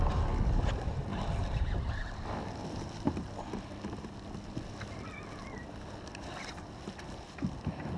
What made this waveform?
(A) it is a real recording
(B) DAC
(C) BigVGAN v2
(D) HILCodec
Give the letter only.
C